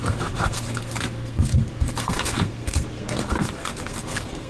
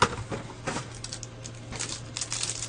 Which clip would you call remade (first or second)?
first